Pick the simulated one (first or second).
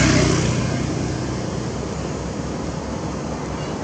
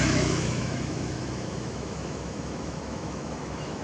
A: second